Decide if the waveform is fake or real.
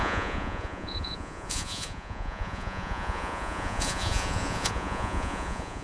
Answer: fake